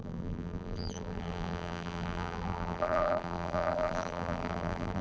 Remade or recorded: remade